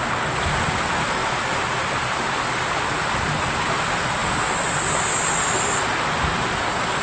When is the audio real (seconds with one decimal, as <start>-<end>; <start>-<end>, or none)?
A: 0.0-7.0